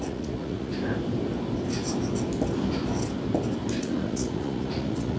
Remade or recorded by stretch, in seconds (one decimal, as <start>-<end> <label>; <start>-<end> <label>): 0.0-0.7 remade; 0.7-3.8 recorded; 3.8-5.2 remade